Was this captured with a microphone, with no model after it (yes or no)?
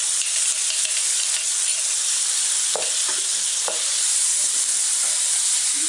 yes